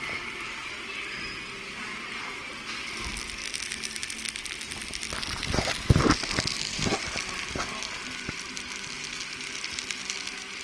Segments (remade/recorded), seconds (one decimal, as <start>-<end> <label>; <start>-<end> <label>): 0.0-10.6 recorded